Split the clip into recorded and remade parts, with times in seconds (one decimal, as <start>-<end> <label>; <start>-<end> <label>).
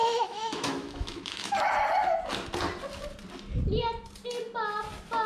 0.0-1.5 remade; 1.5-5.3 recorded